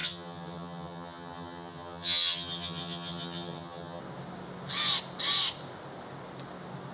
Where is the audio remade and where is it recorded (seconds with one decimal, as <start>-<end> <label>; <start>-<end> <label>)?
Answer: 0.0-4.0 remade; 4.0-6.9 recorded